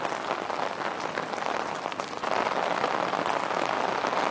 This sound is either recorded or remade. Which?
recorded